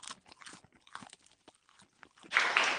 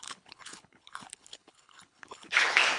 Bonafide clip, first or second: first